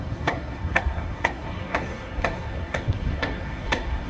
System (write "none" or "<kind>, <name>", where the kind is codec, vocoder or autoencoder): codec, SNAC